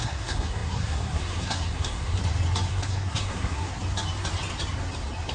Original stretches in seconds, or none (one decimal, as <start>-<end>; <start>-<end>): 2.2-2.7; 3.7-5.3